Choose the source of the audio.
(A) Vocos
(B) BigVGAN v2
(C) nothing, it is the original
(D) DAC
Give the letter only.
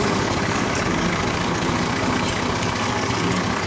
D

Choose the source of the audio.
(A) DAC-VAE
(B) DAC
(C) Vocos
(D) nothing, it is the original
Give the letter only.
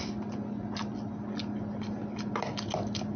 D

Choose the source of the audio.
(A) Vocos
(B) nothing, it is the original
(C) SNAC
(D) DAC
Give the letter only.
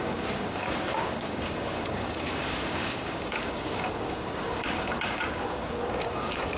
D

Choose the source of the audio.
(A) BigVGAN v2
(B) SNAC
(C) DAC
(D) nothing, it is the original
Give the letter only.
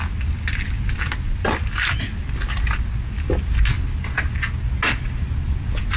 D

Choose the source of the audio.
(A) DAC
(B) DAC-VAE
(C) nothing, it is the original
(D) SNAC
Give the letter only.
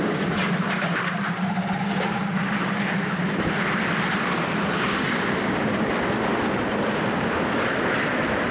C